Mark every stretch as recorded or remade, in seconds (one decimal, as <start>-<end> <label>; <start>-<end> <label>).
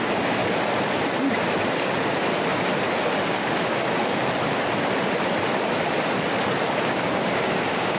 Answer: 0.0-0.4 remade; 0.4-3.2 recorded; 3.2-4.0 remade; 4.0-6.7 recorded; 6.7-8.0 remade